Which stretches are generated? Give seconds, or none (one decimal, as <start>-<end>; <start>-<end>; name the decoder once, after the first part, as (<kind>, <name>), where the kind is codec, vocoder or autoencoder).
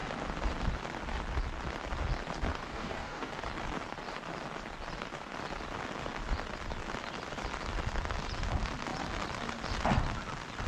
2.5-3.3 (codec, DAC)